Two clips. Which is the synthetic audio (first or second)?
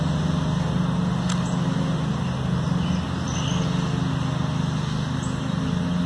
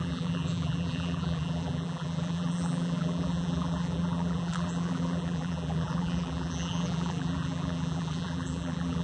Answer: second